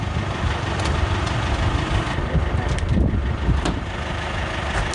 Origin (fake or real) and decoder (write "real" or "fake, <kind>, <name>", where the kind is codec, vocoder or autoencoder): real